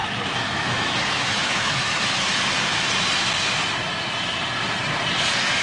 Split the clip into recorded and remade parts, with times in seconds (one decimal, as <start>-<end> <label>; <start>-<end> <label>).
0.0-2.3 remade; 2.3-5.6 recorded